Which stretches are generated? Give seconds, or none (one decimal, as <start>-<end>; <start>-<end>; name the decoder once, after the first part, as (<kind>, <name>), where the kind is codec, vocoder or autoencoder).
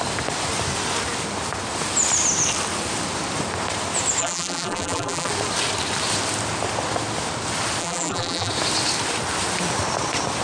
4.2-5.3 (vocoder, BigVGAN v2); 7.8-8.5